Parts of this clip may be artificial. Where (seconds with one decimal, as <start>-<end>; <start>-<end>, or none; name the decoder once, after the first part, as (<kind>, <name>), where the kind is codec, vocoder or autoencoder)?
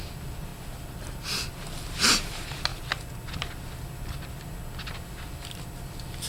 none